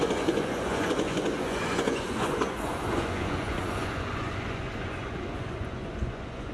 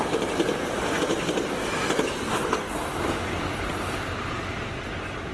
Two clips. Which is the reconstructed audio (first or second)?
first